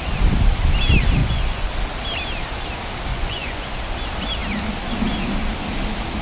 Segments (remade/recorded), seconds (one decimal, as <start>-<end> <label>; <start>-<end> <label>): 0.0-1.2 recorded; 1.2-1.7 remade; 1.7-3.1 recorded; 3.1-3.8 remade; 3.8-6.2 recorded